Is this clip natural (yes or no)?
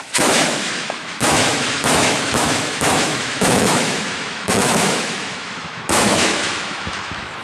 no